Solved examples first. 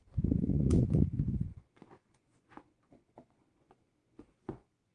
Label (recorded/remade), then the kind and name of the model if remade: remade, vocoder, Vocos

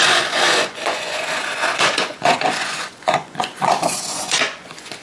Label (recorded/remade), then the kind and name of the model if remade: remade, vocoder, Vocos